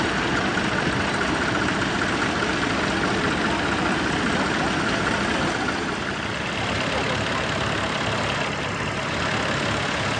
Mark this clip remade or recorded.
recorded